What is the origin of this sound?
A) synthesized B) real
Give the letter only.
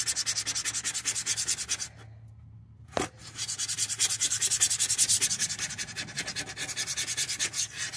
B